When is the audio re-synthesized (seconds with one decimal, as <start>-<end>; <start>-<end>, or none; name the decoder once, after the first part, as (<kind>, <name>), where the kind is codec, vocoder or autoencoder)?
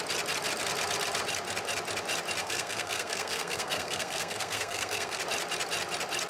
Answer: 2.4-5.2 (codec, SNAC)